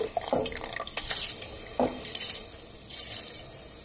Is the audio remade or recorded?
recorded